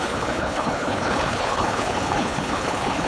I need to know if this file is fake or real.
fake